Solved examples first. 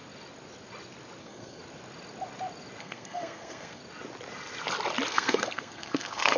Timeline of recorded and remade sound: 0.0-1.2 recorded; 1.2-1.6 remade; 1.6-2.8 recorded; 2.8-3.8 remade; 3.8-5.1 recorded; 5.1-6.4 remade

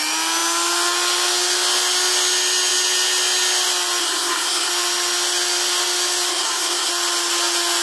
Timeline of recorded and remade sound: 0.0-4.0 recorded; 4.0-4.7 remade; 4.7-6.3 recorded; 6.3-6.9 remade; 6.9-7.8 recorded

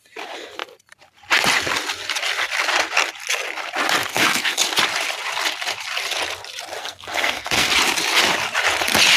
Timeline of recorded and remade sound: 0.0-4.1 recorded; 4.1-4.6 remade; 4.6-6.8 recorded; 6.8-7.7 remade; 7.7-9.2 recorded

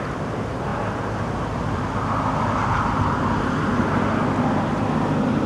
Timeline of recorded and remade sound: 0.0-5.5 recorded

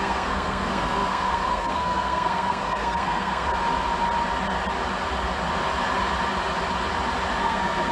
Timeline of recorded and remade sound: 0.0-3.5 remade; 3.5-7.4 recorded; 7.4-7.9 remade